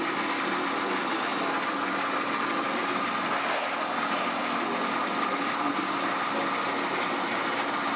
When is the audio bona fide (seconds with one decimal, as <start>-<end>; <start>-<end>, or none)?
0.0-8.0